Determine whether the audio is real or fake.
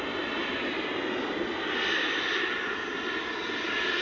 real